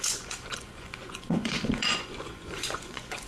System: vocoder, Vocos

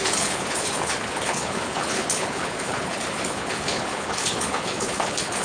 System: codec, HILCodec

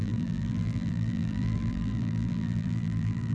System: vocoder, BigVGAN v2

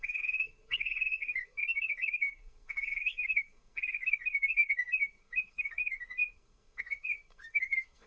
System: codec, SNAC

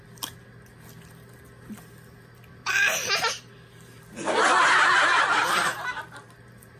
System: none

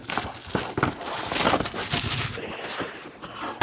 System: none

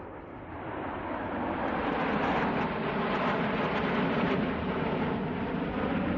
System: none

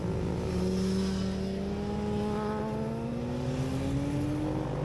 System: none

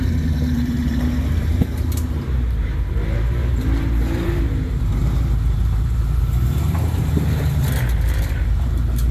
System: vocoder, BigVGAN v2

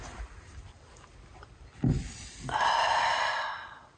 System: none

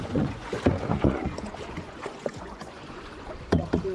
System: vocoder, Vocos